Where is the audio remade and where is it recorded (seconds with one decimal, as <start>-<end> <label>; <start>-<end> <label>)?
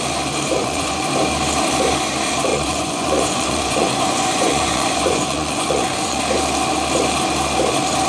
0.0-0.6 recorded; 0.6-1.1 remade; 1.1-2.5 recorded; 2.5-6.2 remade; 6.2-8.1 recorded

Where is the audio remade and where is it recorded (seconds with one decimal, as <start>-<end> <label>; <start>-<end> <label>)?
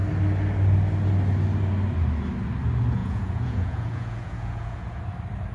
0.0-3.0 recorded; 3.0-5.0 remade; 5.0-5.5 recorded